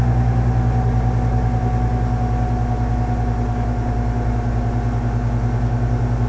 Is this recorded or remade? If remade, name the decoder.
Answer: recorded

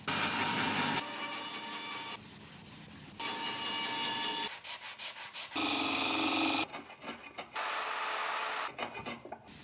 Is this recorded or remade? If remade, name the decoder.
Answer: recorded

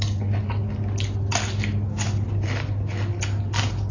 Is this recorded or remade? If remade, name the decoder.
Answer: recorded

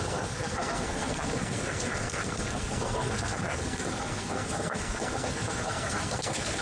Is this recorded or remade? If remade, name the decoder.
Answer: remade, codec, SNAC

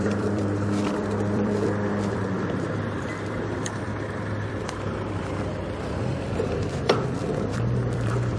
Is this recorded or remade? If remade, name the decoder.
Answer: remade, vocoder, BigVGAN v2